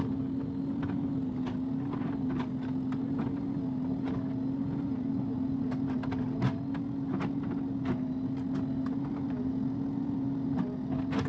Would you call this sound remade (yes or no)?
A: no